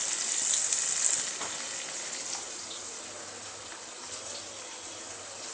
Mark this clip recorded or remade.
recorded